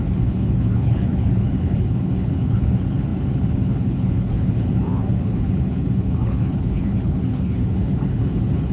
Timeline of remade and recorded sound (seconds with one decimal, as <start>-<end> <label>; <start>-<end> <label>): 0.0-8.7 remade